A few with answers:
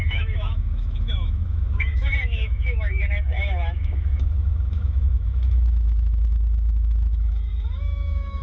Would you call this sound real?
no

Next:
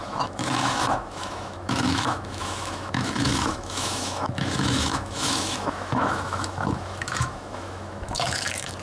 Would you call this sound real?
no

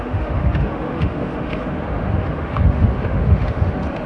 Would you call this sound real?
no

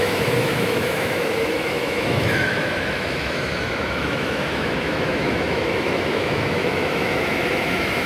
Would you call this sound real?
no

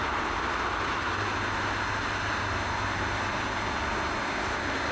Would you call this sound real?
yes